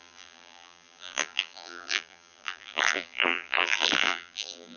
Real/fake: fake